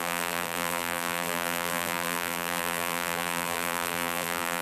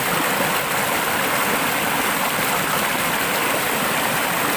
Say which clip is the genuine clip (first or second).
second